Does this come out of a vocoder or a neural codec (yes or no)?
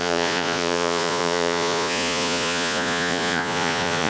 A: yes